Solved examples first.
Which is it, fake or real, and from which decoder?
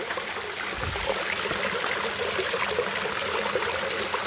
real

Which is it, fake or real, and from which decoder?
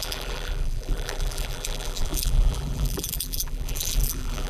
fake, vocoder, BigVGAN v2